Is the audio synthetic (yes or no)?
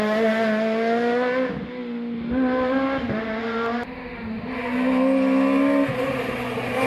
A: no